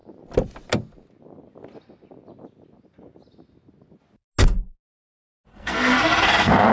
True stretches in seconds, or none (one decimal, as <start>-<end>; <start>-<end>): 0.0-5.5